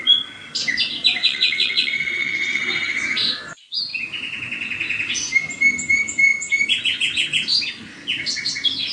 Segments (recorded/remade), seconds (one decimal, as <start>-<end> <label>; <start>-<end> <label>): 0.0-1.2 recorded; 1.2-2.6 remade; 2.6-8.9 recorded